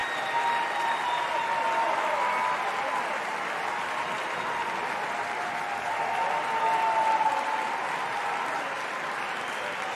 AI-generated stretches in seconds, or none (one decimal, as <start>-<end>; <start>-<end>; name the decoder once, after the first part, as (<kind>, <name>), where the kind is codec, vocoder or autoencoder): none